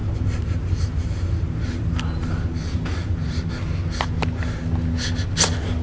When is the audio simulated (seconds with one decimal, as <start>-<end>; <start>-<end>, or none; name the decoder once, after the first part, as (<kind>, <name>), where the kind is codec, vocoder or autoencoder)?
0.0-3.5 (vocoder, BigVGAN v2)